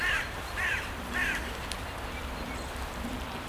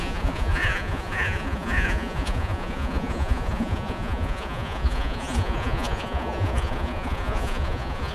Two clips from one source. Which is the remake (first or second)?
second